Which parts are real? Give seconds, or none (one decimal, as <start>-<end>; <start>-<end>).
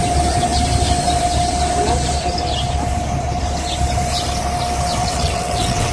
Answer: 0.0-5.0